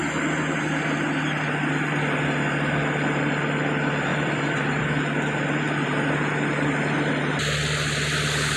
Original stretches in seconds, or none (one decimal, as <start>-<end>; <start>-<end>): 0.0-4.1; 4.8-8.6